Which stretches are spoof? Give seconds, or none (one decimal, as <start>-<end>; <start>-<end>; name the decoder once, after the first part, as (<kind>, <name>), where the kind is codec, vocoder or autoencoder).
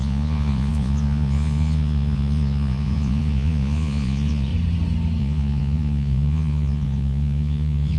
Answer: 0.0-4.5 (vocoder, Vocos); 5.2-8.0